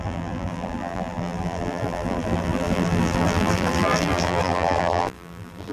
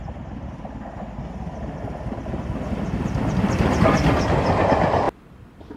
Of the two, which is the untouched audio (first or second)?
second